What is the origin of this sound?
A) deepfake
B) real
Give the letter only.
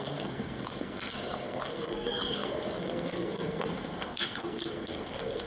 A